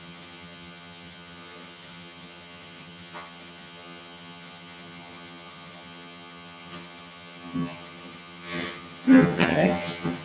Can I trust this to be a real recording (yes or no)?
no